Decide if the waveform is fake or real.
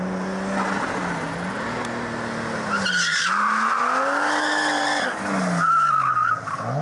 real